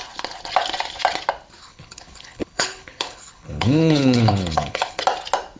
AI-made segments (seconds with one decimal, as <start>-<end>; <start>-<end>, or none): 1.6-5.0